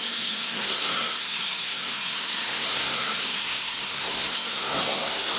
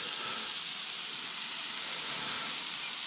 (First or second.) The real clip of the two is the second